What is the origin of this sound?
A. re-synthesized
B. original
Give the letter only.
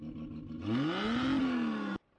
B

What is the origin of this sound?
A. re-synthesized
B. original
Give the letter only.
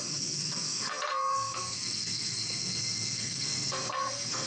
A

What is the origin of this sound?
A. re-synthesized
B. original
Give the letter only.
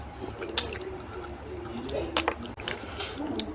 B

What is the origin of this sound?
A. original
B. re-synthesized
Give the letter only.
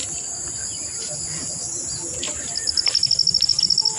A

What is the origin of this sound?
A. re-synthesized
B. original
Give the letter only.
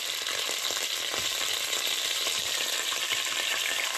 B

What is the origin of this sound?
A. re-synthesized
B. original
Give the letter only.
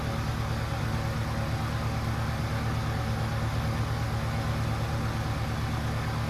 B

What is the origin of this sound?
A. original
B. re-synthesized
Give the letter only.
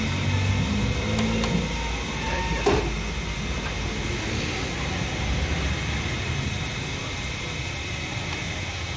A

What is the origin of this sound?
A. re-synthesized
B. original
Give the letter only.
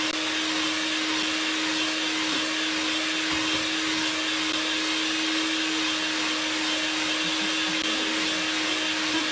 B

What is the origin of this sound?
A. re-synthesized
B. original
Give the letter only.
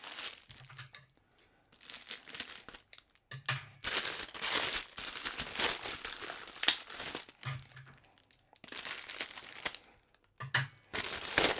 B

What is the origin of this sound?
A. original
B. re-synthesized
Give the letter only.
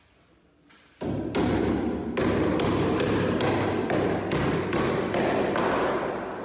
A